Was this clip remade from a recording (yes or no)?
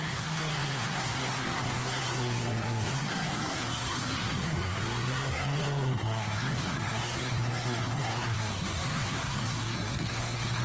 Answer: yes